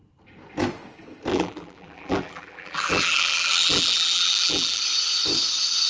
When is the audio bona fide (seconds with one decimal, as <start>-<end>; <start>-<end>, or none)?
0.0-1.3; 4.8-5.9